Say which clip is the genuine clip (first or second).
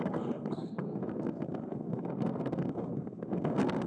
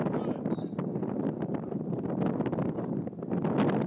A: second